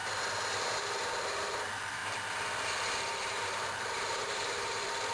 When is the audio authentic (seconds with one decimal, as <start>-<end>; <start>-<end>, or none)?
0.0-0.8; 2.0-3.0